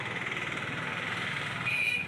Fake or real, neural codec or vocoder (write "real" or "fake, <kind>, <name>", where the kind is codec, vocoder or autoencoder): real